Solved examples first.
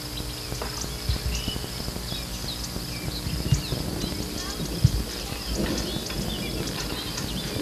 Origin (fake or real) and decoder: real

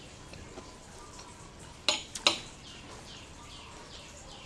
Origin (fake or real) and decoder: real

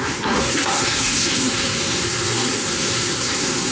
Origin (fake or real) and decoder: fake, codec, SNAC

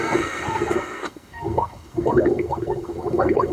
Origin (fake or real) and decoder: fake, codec, SNAC